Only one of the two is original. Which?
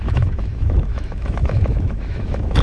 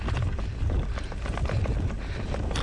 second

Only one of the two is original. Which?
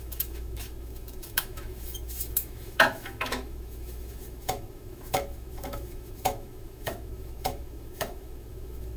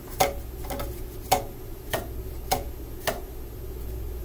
second